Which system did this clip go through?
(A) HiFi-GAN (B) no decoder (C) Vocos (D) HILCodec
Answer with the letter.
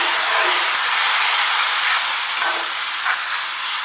B